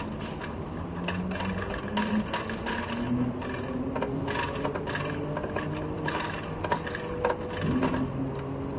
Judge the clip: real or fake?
real